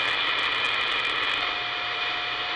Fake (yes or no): no